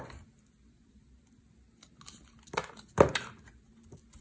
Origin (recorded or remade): recorded